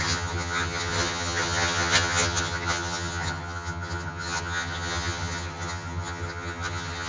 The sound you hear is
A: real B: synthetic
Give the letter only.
B